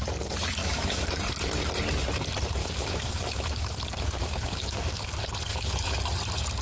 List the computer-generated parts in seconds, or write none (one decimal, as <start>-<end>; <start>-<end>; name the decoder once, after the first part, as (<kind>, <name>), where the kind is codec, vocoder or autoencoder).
0.6-1.2 (autoencoder, DAC-VAE); 2.6-3.7; 4.2-4.9; 5.5-6.0